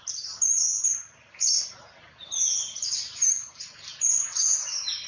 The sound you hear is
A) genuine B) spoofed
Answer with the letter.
A